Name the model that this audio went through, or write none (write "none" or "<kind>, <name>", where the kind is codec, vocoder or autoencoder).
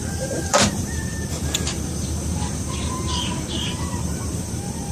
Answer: vocoder, BigVGAN v2